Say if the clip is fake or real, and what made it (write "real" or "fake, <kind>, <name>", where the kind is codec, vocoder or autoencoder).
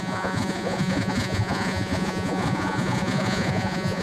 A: fake, vocoder, Vocos